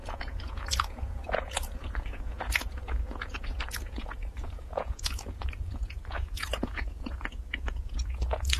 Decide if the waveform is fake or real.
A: fake